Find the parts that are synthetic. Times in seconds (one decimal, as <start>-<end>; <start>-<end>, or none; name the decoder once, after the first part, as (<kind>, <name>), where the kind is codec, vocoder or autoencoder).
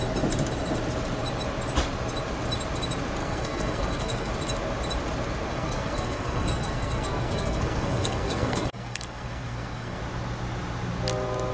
3.2-4.3 (codec, SNAC); 5.5-10.0